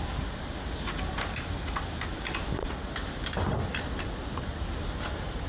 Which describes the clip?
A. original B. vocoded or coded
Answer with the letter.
A